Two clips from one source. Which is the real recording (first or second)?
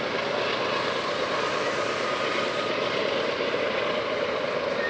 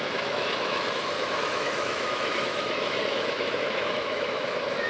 first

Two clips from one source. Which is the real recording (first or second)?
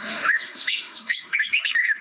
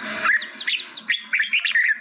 second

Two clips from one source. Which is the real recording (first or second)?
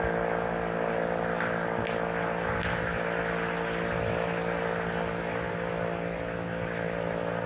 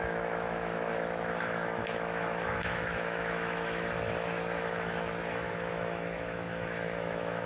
first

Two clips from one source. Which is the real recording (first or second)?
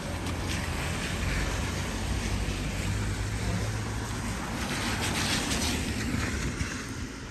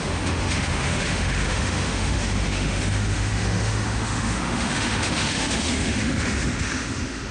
first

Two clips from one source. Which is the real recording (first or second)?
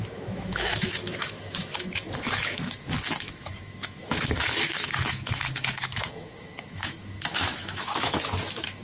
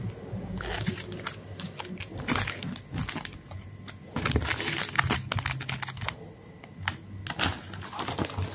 second